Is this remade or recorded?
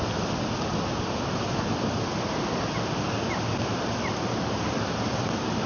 recorded